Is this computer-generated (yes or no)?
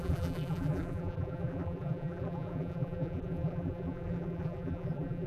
yes